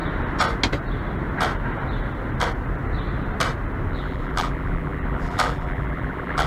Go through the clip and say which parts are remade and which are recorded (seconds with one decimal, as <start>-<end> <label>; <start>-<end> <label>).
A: 0.0-3.9 recorded; 3.9-6.5 remade